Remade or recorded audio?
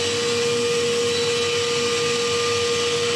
recorded